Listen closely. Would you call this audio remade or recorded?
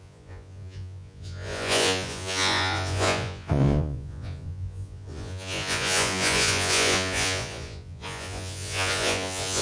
remade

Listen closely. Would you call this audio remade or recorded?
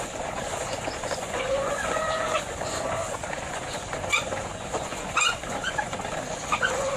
remade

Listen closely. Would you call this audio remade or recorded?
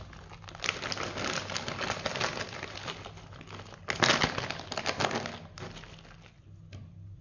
recorded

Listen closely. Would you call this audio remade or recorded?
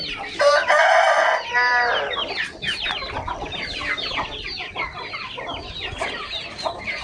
recorded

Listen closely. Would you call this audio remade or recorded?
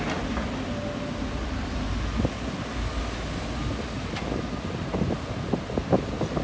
recorded